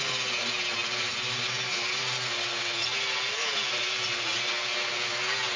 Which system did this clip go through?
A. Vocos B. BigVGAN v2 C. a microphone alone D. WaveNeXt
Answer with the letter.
C